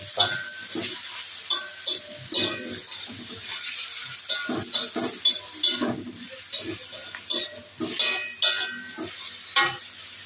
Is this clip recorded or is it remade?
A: recorded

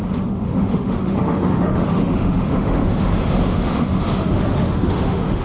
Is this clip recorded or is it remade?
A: remade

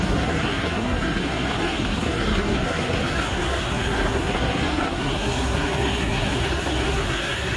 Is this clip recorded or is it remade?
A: remade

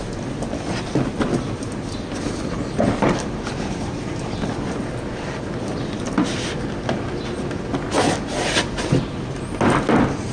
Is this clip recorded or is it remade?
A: recorded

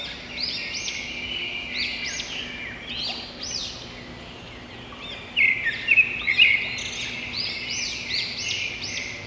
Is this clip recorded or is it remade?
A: recorded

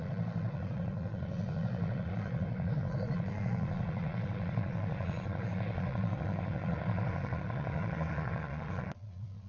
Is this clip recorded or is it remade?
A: remade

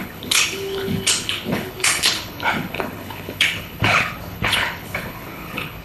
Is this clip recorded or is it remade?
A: remade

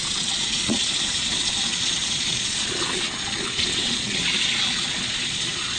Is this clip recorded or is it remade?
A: remade